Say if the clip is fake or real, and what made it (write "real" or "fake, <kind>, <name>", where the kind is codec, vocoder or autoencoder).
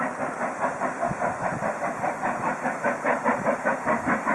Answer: real